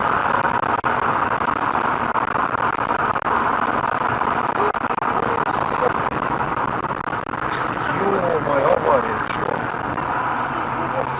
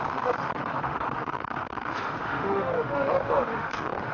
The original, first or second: first